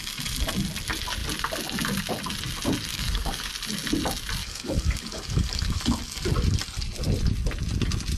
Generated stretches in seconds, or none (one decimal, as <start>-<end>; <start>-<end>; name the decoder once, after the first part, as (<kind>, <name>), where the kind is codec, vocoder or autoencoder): 2.9-3.5 (codec, DAC); 4.4-5.8